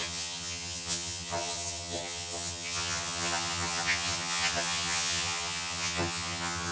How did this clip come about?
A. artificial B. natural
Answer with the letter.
A